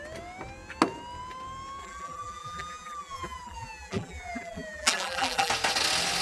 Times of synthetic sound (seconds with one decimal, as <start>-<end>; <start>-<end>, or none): 1.8-5.5